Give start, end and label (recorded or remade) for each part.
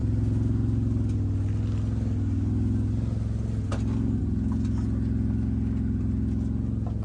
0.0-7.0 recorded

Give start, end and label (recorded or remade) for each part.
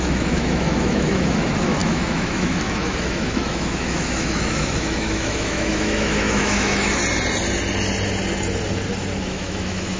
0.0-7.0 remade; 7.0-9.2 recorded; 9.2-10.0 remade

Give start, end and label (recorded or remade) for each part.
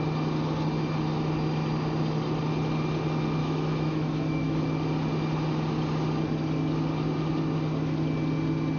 0.0-3.4 recorded; 3.4-4.6 remade; 4.6-8.8 recorded